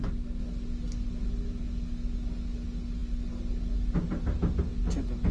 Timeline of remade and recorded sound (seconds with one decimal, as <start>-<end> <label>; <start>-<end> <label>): 0.0-5.3 recorded